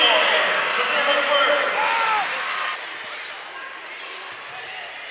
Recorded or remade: recorded